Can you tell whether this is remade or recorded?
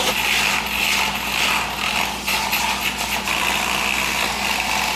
recorded